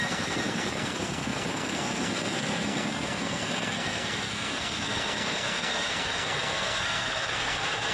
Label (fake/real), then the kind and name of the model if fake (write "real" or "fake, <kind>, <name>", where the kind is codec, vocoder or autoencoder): fake, codec, SNAC